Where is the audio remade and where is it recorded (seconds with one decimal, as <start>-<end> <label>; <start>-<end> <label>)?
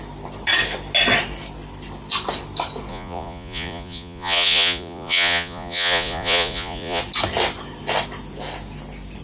0.0-2.9 recorded; 2.9-7.0 remade; 7.0-9.2 recorded